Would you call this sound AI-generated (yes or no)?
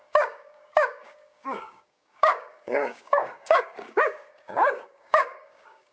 yes